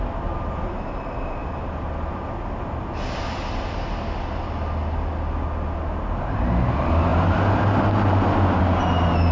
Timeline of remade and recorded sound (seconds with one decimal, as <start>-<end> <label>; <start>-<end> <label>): 0.0-9.3 recorded